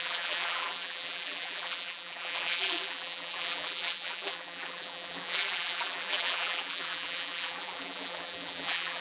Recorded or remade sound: remade